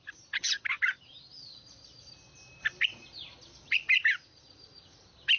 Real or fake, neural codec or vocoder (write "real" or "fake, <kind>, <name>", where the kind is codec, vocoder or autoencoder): real